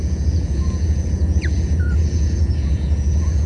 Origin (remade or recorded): remade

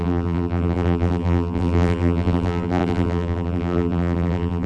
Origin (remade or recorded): remade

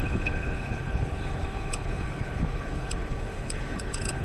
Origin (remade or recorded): remade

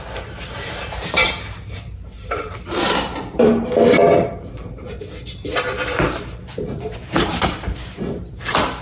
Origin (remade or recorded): remade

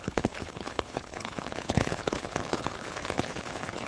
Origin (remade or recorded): remade